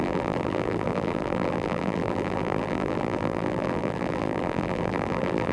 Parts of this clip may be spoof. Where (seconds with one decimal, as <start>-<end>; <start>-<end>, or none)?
0.0-5.5

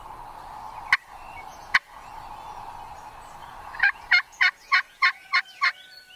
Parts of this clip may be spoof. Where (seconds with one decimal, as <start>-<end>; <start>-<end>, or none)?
1.5-2.1; 3.4-5.4

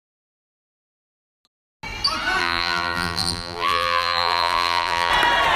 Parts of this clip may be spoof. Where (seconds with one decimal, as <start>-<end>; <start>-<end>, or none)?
2.4-5.1

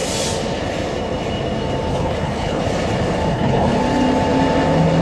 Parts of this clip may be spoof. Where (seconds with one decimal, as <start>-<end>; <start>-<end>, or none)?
1.9-2.6; 3.3-3.8

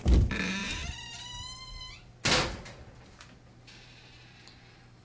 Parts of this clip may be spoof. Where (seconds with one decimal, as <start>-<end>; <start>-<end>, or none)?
none